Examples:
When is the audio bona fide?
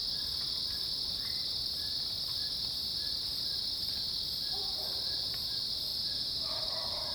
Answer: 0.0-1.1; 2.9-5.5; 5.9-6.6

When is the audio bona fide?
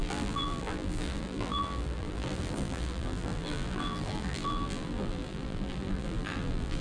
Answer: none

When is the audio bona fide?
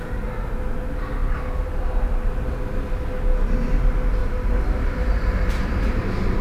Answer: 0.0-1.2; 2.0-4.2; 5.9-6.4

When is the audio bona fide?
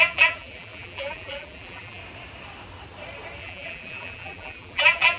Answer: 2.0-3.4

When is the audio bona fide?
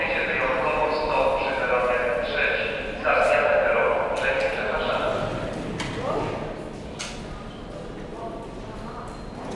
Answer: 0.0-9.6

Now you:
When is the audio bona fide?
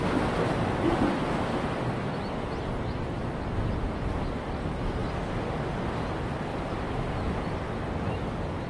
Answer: 0.0-8.7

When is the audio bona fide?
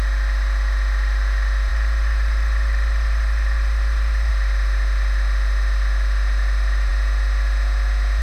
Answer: 0.0-1.7; 4.3-8.2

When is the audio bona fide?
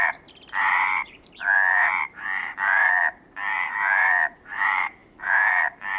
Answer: none